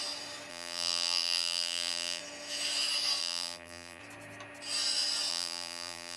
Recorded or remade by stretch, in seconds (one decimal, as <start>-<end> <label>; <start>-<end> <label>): 0.0-0.5 recorded; 0.5-2.2 remade; 2.2-3.2 recorded; 3.2-4.0 remade; 4.0-5.3 recorded; 5.3-6.2 remade